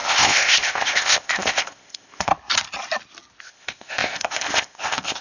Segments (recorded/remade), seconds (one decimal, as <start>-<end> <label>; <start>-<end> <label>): 0.0-2.3 remade; 2.3-3.4 recorded; 3.4-5.2 remade